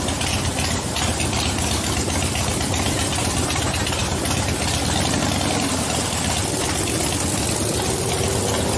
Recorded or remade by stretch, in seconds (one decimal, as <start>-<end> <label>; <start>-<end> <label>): 0.0-8.8 recorded